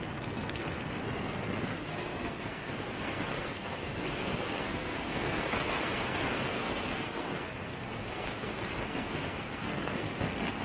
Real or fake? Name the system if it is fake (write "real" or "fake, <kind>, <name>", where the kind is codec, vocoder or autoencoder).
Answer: fake, codec, SNAC